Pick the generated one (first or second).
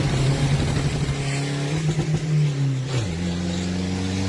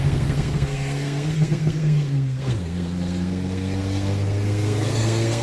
second